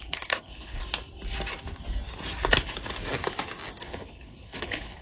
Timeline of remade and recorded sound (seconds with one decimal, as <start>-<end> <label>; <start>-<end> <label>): 0.0-0.8 remade; 0.8-3.8 recorded; 3.8-5.0 remade

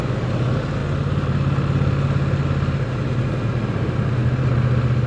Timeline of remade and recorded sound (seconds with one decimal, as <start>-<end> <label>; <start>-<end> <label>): 0.0-5.1 recorded

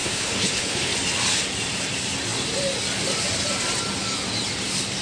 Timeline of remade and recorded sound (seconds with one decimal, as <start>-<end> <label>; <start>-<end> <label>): 0.0-0.9 remade; 0.9-5.0 recorded

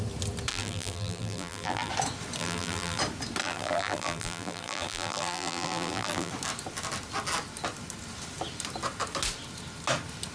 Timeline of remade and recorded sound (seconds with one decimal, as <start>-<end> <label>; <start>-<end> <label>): 0.0-0.5 recorded; 0.5-1.9 remade; 1.9-2.4 recorded; 2.4-3.0 remade; 3.0-3.4 recorded; 3.4-6.3 remade; 6.3-10.3 recorded

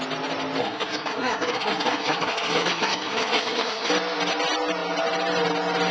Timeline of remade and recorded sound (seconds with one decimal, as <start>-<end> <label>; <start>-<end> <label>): 0.0-0.6 recorded; 0.6-3.9 remade; 3.9-5.9 recorded